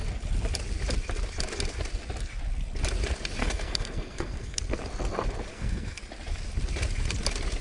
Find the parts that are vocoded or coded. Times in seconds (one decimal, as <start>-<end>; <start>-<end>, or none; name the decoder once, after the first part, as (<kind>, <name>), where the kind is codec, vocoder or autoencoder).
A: 3.4-4.6 (codec, SNAC); 5.5-6.0